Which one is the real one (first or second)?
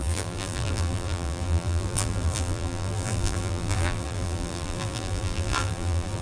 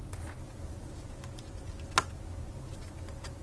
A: second